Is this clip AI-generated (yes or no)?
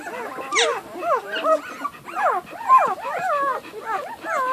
no